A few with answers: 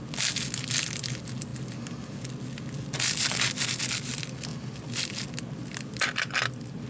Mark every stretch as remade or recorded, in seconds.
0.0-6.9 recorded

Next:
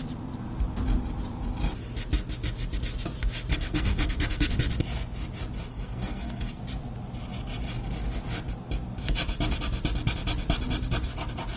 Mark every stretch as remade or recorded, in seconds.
0.0-3.5 recorded; 3.5-4.5 remade; 4.5-5.7 recorded; 5.7-6.6 remade; 6.6-11.6 recorded

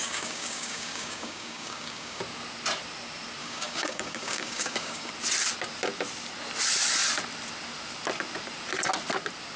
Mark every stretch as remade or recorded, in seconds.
0.0-2.2 remade; 2.2-3.4 recorded; 3.4-5.1 remade; 5.1-9.6 recorded

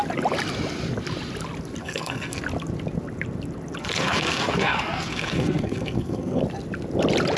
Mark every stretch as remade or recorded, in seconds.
0.0-1.8 recorded; 1.8-2.4 remade; 2.4-3.8 recorded; 3.8-6.4 remade; 6.4-7.4 recorded

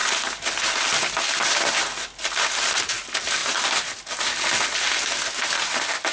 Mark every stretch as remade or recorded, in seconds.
0.0-6.1 recorded

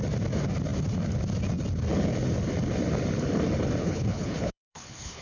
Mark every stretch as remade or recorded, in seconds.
0.0-3.8 recorded; 3.8-5.2 remade

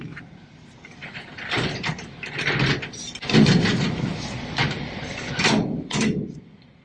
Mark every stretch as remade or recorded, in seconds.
0.0-6.8 remade

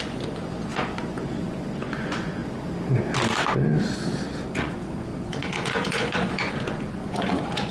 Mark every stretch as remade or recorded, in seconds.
0.0-2.4 remade; 2.4-4.6 recorded; 4.6-7.7 remade